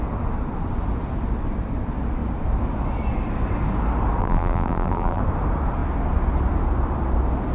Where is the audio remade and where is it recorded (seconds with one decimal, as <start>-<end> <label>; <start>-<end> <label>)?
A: 0.0-4.2 recorded; 4.2-5.2 remade; 5.2-7.5 recorded